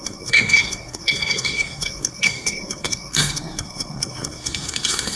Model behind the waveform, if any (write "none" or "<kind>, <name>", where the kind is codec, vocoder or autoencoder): codec, SNAC